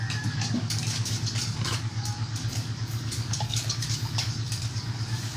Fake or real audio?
fake